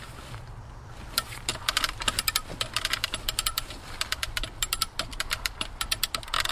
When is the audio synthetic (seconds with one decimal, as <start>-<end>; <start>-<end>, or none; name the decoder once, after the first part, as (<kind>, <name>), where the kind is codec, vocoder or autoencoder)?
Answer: none